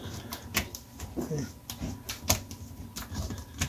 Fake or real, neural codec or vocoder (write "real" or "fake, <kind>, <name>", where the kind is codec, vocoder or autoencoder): real